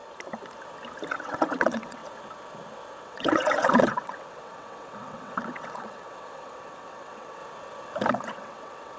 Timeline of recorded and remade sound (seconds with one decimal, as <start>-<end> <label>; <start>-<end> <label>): 0.0-1.1 recorded; 1.1-2.0 remade; 2.0-3.0 recorded; 3.0-7.4 remade; 7.4-8.1 recorded; 8.1-9.0 remade